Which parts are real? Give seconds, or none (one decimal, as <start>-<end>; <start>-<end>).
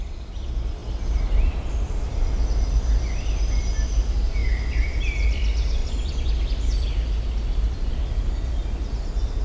0.0-4.4; 5.0-9.4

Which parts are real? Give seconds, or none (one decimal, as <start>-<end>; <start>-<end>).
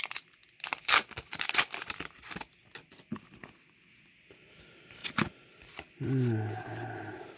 0.0-7.4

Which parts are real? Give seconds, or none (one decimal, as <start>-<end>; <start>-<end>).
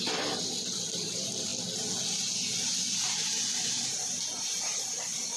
1.5-3.2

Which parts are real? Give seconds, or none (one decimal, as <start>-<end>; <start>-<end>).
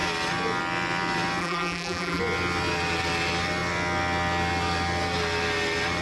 0.0-1.4; 2.2-6.0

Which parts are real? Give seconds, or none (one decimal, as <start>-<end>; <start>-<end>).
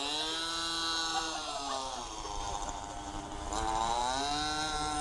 0.0-1.1; 4.0-5.0